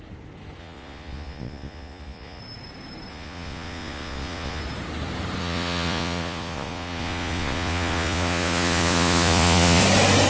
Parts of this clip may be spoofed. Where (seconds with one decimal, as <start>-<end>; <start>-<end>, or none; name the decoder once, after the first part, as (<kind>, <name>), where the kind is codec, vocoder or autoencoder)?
0.6-2.4 (vocoder, Vocos); 3.1-4.6; 5.4-9.8